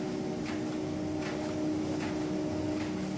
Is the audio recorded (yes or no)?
yes